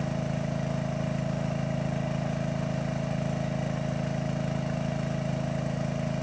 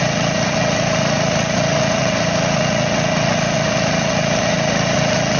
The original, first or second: first